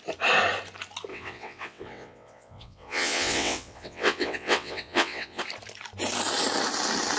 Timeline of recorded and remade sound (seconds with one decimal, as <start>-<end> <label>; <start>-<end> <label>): 0.0-1.1 recorded; 1.1-5.4 remade; 5.4-7.2 recorded